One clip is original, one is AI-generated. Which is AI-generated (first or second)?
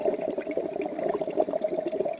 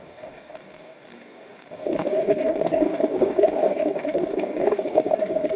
second